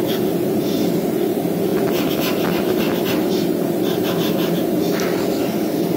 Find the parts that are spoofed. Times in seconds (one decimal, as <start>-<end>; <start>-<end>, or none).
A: none